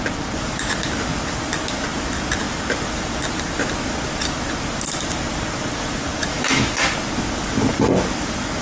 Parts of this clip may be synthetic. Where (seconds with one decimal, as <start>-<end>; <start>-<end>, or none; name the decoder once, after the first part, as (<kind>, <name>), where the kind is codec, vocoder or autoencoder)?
6.3-6.8 (autoencoder, DAC-VAE)